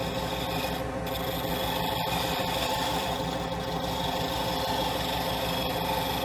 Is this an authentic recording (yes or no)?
yes